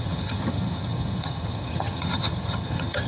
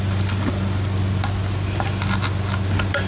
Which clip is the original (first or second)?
second